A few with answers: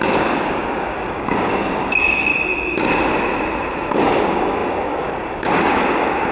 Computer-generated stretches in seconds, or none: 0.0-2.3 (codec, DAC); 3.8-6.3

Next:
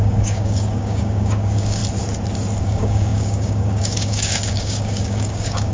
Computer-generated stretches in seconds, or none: 0.0-1.8 (codec, DAC); 2.6-5.7

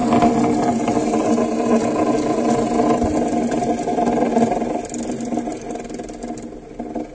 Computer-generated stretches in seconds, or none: none

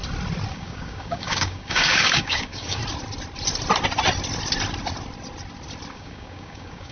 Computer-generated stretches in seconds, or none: 0.5-2.8 (codec, DAC); 5.9-6.9

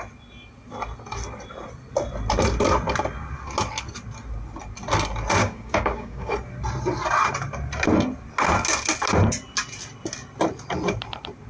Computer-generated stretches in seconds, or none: 5.4-6.3 (codec, DAC)

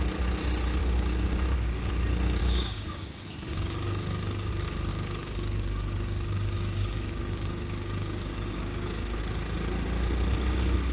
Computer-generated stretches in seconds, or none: 0.8-1.9 (codec, DAC); 2.4-4.5; 4.9-9.2